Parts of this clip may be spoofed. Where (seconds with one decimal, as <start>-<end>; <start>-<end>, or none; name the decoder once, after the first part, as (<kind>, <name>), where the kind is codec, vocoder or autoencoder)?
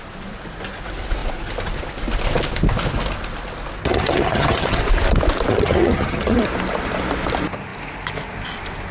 3.8-4.8 (vocoder, HiFi-GAN); 5.5-6.4